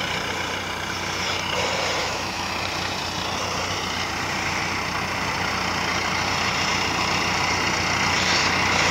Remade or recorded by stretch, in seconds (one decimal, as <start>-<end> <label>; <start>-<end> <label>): 0.0-2.0 recorded; 2.0-2.5 remade; 2.5-8.9 recorded